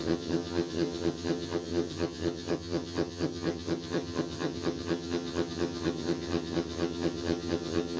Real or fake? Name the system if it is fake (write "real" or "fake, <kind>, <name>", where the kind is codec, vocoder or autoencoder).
fake, vocoder, HiFi-GAN